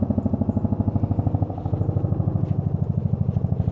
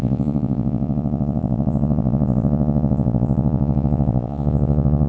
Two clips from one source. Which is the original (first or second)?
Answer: first